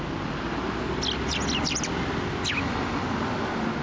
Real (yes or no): yes